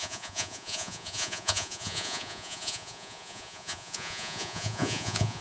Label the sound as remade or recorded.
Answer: remade